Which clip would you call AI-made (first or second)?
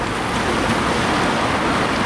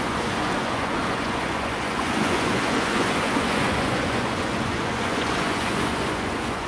second